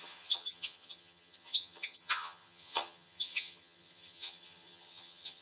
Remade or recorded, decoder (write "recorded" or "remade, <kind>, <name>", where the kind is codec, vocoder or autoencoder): remade, vocoder, HiFi-GAN